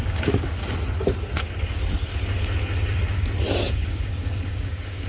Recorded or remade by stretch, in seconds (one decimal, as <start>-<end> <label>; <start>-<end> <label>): 0.0-0.6 remade; 0.6-3.7 recorded; 3.7-5.1 remade

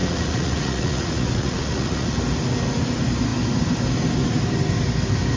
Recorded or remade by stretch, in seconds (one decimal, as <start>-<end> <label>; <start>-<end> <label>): 0.0-2.2 remade; 2.2-5.4 recorded

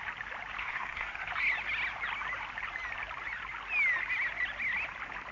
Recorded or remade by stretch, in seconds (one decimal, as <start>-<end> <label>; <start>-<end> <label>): 0.0-0.6 recorded; 0.6-1.3 remade; 1.3-5.3 recorded